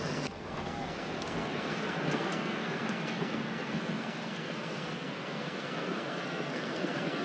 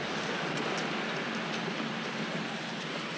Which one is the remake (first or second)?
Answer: first